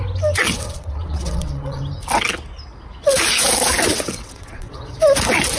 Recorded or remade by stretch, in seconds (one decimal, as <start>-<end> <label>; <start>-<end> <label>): 0.0-0.4 recorded; 0.4-1.8 remade; 1.8-3.9 recorded; 3.9-5.0 remade; 5.0-5.6 recorded